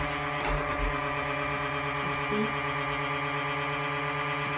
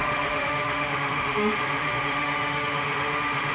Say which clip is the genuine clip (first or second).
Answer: first